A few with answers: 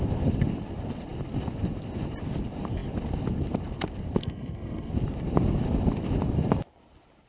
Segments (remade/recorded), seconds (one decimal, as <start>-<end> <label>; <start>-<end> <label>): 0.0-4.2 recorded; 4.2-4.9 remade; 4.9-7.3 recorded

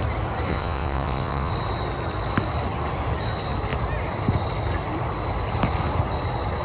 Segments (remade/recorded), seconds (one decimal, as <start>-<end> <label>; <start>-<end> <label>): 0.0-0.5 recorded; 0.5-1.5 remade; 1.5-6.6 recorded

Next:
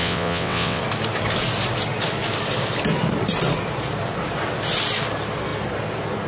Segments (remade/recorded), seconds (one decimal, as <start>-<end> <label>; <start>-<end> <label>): 0.0-0.8 remade; 0.8-6.3 recorded